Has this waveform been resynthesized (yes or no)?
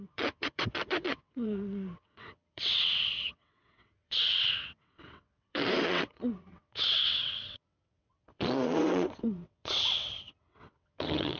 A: yes